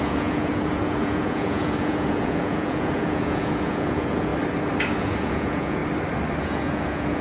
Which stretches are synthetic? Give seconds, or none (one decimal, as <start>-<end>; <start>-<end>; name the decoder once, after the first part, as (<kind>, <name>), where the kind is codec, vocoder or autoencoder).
0.0-4.3 (vocoder, Vocos); 5.0-5.8; 6.4-7.2